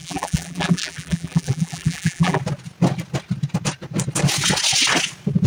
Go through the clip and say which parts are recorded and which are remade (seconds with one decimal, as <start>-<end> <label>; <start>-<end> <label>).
0.0-2.4 remade; 2.4-5.5 recorded

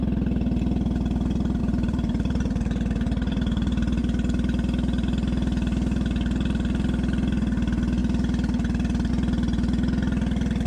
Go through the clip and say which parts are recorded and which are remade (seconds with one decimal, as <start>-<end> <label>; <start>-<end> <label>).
0.0-1.6 recorded; 1.6-4.0 remade; 4.0-10.7 recorded

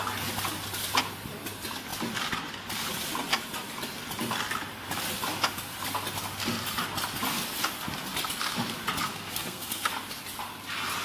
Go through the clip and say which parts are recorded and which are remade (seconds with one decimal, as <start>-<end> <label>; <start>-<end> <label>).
0.0-9.1 recorded; 9.1-9.9 remade; 9.9-11.0 recorded

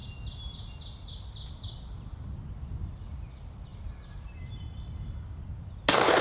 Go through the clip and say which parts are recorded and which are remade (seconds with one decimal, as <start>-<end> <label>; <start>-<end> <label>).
0.0-6.2 recorded

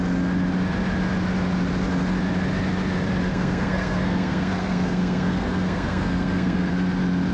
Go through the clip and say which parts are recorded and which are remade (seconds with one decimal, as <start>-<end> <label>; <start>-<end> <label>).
0.0-3.3 recorded; 3.3-6.7 remade; 6.7-7.3 recorded